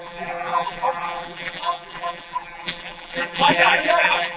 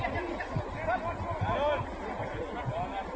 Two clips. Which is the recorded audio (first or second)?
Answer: second